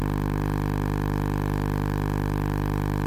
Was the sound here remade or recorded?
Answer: recorded